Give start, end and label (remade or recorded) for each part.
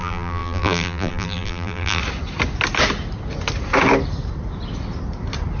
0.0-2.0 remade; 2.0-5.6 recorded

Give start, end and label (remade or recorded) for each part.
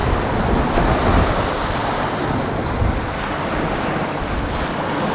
0.0-1.8 recorded; 1.8-2.4 remade; 2.4-5.1 recorded